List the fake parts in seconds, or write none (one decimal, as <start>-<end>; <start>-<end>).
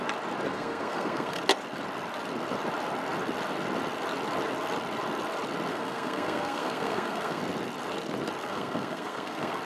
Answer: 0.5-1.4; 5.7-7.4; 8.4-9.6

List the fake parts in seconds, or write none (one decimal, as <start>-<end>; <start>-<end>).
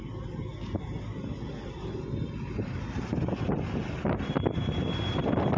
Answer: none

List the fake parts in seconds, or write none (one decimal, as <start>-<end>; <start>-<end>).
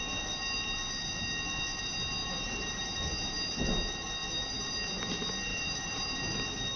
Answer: 2.2-2.8; 5.5-6.2